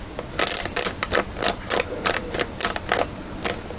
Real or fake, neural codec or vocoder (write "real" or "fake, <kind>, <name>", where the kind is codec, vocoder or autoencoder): real